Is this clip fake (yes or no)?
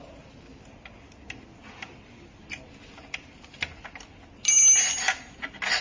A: no